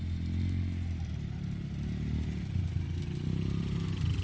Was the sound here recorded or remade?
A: recorded